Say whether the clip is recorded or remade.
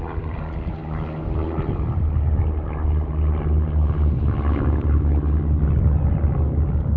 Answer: recorded